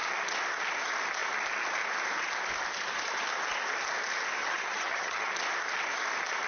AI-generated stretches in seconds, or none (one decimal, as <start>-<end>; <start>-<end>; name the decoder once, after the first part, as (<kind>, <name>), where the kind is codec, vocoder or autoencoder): 4.4-5.3 (vocoder, HiFi-GAN)